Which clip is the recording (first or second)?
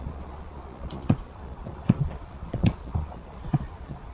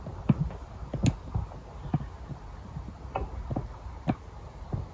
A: second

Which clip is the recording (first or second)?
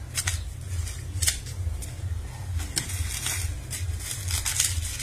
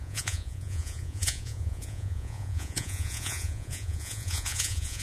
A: first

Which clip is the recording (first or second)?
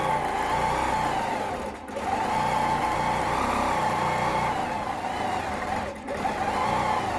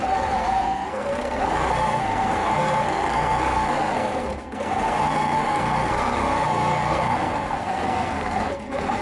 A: first